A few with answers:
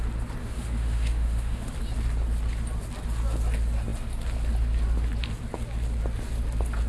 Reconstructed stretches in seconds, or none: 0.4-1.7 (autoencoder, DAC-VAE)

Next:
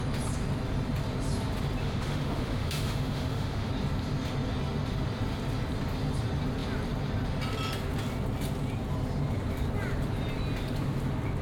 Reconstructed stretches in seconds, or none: 1.8-3.7 (autoencoder, DAC-VAE)